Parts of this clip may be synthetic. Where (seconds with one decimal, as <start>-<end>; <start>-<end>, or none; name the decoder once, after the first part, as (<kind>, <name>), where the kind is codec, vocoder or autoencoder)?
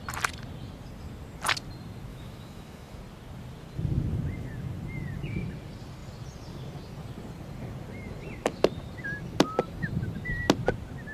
2.1-3.0 (autoencoder, DAC-VAE)